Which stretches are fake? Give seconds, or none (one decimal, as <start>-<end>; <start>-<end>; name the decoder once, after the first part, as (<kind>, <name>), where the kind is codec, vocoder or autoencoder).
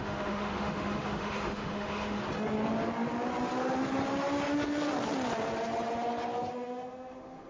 0.0-2.2 (autoencoder, DAC-VAE); 6.5-7.5